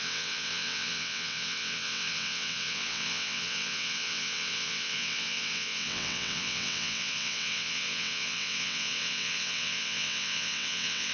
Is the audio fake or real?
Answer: fake